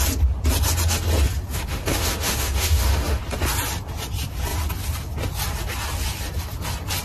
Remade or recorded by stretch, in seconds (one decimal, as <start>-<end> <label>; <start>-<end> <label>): 0.0-1.5 recorded; 1.5-3.2 remade; 3.2-7.0 recorded